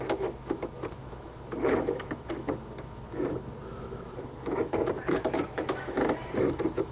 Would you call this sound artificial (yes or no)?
yes